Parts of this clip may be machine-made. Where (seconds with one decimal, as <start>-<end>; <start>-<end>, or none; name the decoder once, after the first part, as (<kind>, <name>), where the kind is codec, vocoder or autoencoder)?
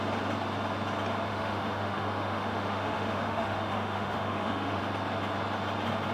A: 1.3-4.8 (autoencoder, DAC-VAE)